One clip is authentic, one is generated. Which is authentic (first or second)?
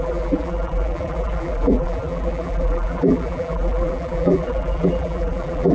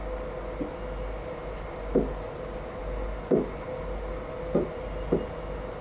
second